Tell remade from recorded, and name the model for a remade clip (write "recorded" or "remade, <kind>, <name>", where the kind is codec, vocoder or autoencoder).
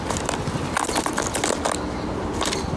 recorded